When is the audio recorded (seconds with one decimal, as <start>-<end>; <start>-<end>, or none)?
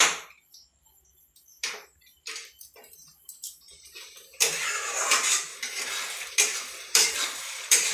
5.5-6.3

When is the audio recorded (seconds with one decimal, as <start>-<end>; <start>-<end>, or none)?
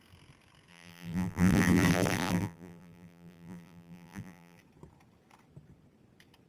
0.0-0.7; 4.6-6.5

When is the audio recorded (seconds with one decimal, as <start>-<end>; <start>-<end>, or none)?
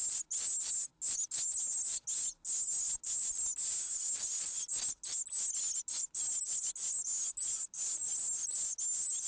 0.0-9.3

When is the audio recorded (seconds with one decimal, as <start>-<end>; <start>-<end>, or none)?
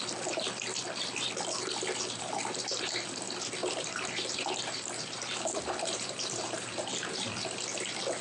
0.0-3.6; 7.1-8.2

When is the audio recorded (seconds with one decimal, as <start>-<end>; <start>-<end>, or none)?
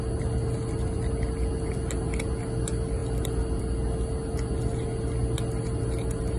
0.0-6.4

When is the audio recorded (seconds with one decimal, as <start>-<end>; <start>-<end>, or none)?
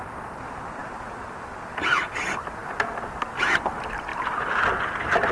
0.0-5.3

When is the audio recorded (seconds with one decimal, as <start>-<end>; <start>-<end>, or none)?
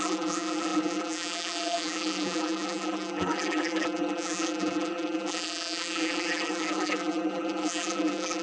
none